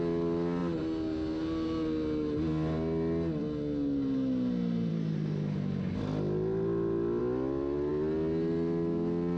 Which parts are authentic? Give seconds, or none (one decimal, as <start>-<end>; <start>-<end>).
0.0-9.4